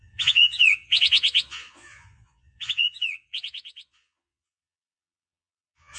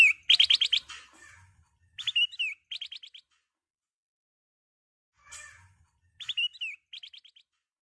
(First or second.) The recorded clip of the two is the second